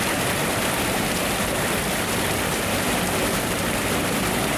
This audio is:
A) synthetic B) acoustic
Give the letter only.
B